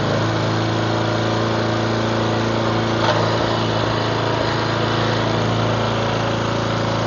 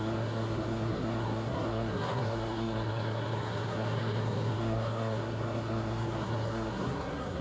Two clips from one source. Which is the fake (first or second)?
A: second